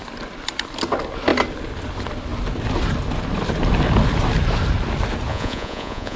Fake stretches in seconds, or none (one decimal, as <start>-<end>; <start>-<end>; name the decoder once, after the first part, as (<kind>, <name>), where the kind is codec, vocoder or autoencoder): 5.3-6.2 (vocoder, Vocos)